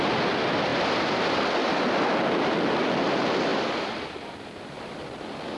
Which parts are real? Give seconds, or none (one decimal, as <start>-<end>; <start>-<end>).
0.0-3.5; 4.7-5.6